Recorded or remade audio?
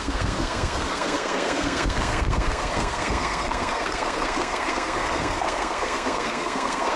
remade